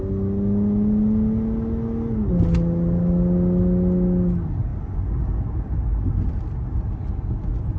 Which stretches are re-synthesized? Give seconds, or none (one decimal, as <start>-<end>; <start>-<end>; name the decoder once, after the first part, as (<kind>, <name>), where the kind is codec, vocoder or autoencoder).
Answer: none

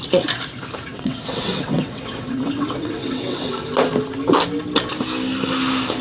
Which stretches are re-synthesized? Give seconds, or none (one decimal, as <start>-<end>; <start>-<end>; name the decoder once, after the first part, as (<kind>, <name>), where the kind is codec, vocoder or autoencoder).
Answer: 0.9-3.5 (vocoder, WaveNeXt)

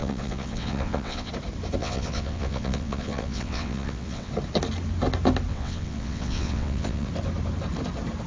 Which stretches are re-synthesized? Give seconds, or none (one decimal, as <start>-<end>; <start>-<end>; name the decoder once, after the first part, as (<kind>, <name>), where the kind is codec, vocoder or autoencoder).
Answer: 0.0-1.3 (vocoder, WaveNeXt); 1.8-4.3; 5.5-7.1

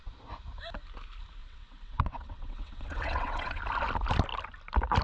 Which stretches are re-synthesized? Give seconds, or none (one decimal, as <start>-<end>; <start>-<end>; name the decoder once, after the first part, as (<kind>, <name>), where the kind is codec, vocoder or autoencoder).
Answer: 1.4-3.6 (vocoder, WaveNeXt)

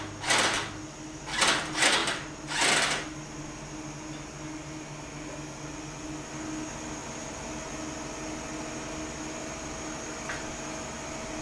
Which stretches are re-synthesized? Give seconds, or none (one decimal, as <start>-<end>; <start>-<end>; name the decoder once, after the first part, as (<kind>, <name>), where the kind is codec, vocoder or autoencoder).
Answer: none